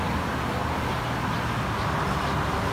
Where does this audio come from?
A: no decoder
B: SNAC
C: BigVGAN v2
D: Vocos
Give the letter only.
A